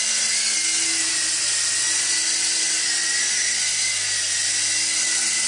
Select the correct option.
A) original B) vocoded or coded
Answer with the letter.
A